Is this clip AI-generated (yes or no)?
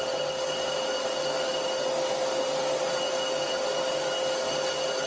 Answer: no